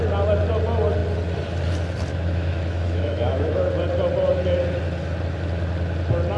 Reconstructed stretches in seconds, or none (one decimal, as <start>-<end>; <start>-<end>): 2.1-3.7